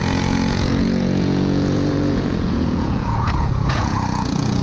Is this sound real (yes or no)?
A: no